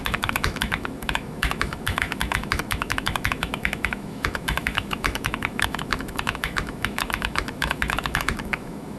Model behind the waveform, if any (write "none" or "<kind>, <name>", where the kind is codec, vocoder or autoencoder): autoencoder, DAC-VAE